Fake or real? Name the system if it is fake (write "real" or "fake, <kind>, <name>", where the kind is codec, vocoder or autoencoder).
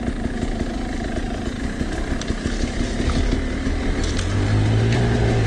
real